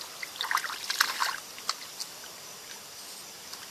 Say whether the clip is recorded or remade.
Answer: recorded